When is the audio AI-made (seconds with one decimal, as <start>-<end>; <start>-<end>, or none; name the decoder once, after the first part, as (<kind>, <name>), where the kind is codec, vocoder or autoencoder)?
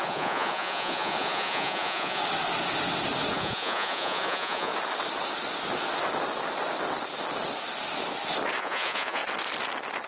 0.0-2.2 (vocoder, Vocos); 3.3-4.7; 8.6-9.2